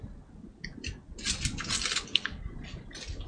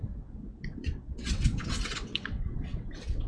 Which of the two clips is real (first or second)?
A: first